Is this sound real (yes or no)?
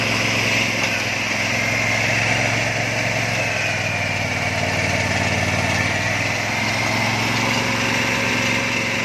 yes